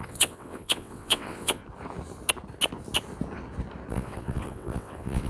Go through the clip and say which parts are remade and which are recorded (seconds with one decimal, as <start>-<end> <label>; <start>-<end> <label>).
0.0-1.6 remade; 1.6-3.9 recorded; 3.9-5.3 remade